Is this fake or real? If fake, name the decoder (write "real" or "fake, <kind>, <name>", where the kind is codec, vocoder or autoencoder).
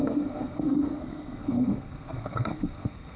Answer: fake, codec, SNAC